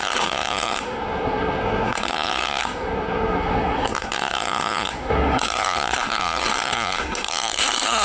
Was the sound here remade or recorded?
remade